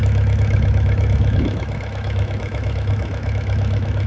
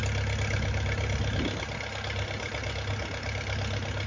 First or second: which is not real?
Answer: first